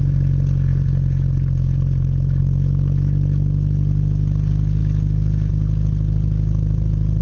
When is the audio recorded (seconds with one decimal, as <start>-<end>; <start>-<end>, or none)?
0.0-7.2